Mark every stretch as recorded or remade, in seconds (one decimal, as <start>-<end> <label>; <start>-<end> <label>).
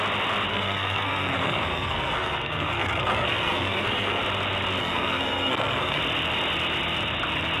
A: 0.0-0.5 recorded; 0.5-4.2 remade; 4.2-4.8 recorded; 4.8-6.0 remade; 6.0-7.6 recorded